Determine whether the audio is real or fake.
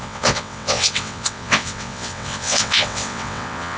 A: fake